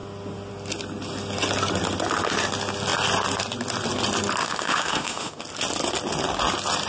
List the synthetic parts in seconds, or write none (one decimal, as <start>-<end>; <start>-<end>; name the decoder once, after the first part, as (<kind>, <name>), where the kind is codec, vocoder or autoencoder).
4.4-5.4 (autoencoder, DAC-VAE)